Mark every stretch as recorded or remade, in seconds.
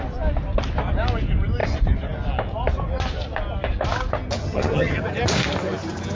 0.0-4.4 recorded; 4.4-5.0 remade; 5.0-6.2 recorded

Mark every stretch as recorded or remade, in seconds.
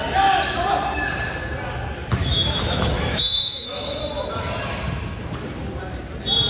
0.0-2.2 recorded; 2.2-4.0 remade; 4.0-6.5 recorded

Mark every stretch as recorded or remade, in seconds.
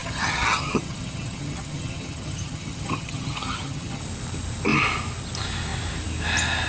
0.0-4.0 remade; 4.0-6.7 recorded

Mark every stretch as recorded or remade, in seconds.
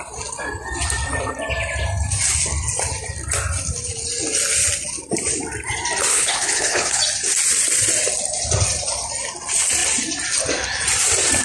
0.0-6.1 recorded; 6.1-7.0 remade; 7.0-11.4 recorded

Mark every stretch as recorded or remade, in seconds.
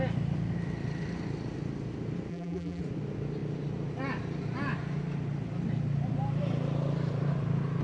0.0-2.3 recorded; 2.3-2.8 remade; 2.8-7.8 recorded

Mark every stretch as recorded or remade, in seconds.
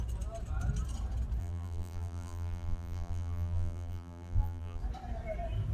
0.0-1.4 recorded; 1.4-4.8 remade; 4.8-5.7 recorded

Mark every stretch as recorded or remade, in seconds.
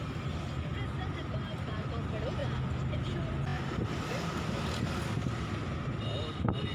0.0-6.7 recorded